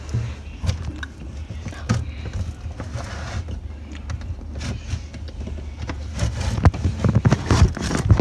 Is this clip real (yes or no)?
yes